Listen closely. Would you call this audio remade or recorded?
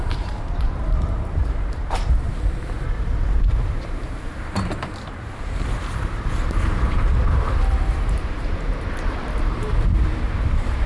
remade